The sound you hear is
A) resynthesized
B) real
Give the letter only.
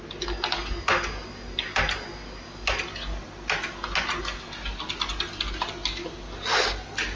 B